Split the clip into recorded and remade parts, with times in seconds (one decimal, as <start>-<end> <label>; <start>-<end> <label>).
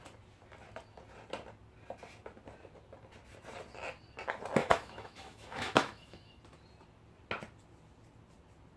0.0-4.6 recorded; 4.6-6.4 remade; 6.4-8.8 recorded